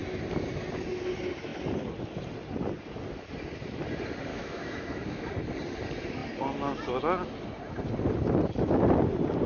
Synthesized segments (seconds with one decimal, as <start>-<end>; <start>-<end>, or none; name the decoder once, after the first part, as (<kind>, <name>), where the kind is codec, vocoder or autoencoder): 4.3-5.3 (autoencoder, DAC-VAE)